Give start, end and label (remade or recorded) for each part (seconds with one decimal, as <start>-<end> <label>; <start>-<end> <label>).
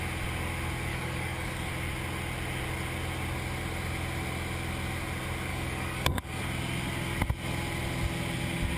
0.0-0.9 recorded; 0.9-1.7 remade; 1.7-5.5 recorded; 5.5-6.4 remade; 6.4-8.8 recorded